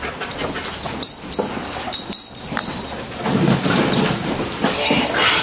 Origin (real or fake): real